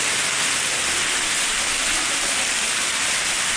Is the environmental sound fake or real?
real